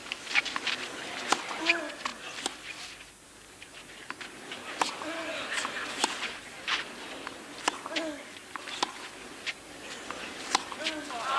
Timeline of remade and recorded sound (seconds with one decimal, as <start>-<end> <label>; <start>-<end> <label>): 0.0-11.4 recorded